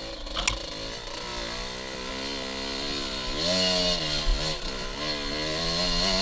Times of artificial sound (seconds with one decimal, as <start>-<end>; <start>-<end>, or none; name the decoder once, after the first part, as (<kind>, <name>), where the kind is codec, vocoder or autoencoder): none